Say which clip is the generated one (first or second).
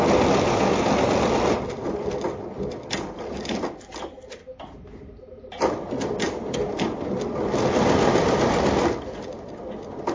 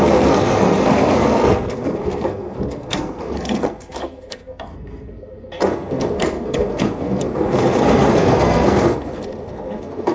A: second